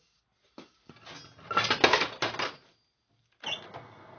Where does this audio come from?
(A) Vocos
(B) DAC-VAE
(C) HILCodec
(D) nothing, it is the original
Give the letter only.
D